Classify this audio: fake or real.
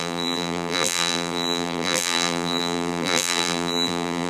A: fake